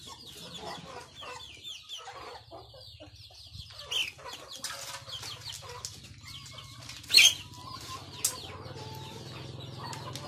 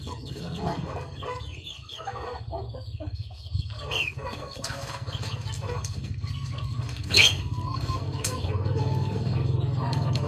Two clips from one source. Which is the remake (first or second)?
second